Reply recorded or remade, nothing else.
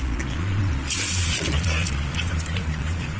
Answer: remade